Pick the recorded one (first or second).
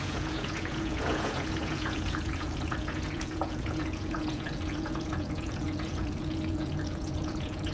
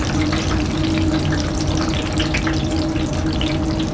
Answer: second